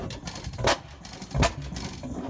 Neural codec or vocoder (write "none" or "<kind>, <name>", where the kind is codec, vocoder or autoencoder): none